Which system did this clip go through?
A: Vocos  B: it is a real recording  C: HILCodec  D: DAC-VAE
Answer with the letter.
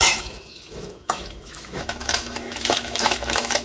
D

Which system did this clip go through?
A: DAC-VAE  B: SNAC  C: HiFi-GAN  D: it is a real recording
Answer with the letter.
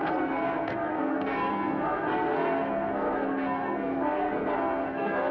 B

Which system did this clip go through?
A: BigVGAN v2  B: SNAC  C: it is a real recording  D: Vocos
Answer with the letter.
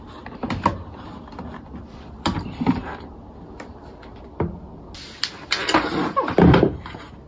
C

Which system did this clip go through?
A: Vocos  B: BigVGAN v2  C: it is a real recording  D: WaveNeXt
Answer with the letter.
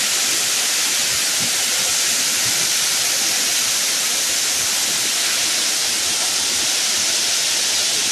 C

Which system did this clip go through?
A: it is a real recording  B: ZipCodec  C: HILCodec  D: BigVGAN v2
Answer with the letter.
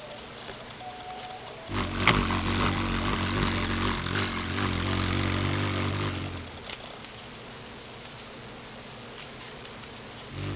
A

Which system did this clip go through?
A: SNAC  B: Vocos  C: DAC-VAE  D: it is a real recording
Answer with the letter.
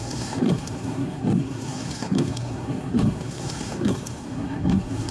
A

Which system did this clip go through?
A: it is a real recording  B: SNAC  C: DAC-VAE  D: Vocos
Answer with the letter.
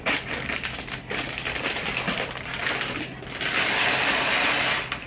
A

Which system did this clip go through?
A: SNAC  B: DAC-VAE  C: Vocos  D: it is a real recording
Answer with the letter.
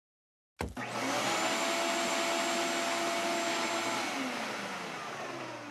D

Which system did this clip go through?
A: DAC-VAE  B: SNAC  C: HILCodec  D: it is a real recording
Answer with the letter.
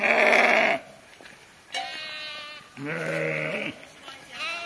D